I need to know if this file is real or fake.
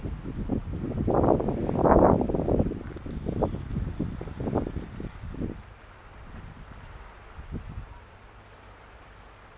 real